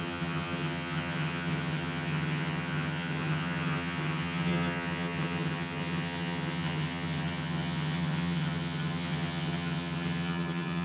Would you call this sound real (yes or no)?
no